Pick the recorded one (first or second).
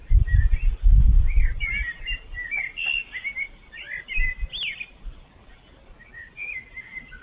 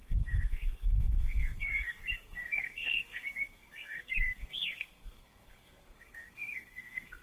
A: first